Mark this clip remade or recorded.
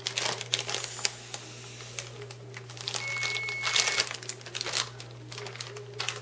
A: recorded